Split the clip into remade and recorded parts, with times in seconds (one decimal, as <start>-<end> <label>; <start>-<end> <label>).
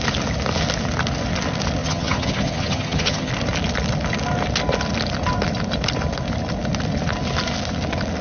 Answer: 0.0-1.8 recorded; 1.8-3.3 remade; 3.3-8.2 recorded